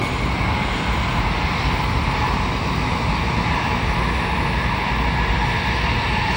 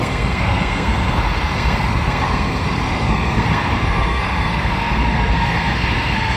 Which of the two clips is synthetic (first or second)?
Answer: second